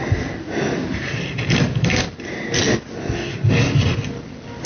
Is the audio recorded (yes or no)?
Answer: yes